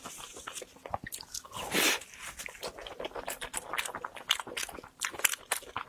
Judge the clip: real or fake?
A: real